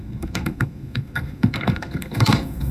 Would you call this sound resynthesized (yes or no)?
yes